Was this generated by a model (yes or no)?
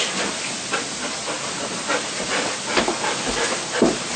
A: no